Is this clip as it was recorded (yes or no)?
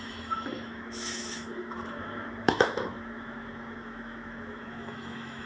no